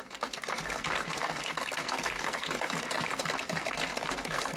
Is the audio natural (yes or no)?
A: no